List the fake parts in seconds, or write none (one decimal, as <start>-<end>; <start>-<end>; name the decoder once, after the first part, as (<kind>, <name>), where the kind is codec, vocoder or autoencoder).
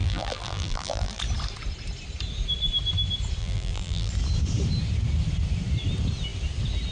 0.0-1.2 (vocoder, BigVGAN v2); 3.4-4.1